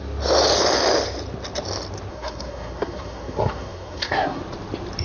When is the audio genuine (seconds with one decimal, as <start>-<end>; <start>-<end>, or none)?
0.0-2.1; 4.4-5.0